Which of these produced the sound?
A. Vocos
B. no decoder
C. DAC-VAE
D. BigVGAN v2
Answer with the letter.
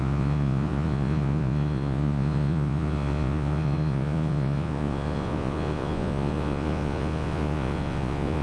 A